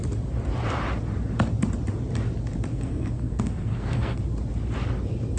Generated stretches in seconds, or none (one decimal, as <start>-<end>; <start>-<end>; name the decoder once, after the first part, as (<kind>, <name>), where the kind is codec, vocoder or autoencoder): 2.7-4.2 (codec, SNAC)